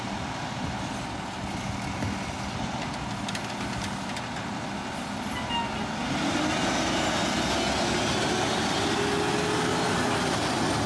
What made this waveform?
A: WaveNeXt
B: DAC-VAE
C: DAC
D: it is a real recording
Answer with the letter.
D